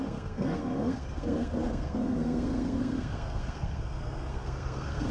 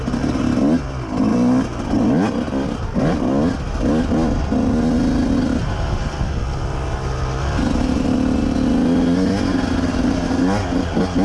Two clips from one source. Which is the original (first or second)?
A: second